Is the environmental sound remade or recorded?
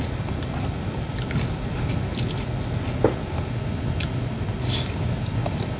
recorded